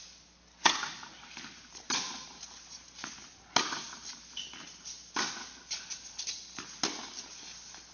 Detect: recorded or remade recorded